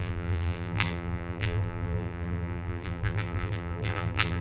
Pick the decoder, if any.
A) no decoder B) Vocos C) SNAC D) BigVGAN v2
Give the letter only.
D